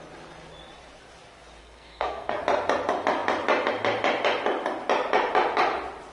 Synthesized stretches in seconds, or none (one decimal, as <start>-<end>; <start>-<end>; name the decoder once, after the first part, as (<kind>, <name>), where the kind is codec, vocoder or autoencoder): 1.6-2.4 (codec, SNAC)